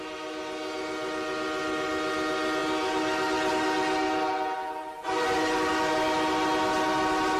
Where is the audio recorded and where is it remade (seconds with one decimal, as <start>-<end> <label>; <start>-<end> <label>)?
0.0-7.4 recorded